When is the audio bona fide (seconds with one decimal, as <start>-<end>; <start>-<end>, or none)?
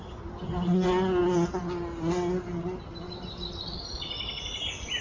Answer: 0.0-5.0